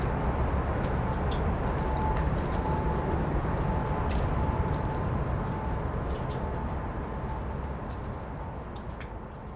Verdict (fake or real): real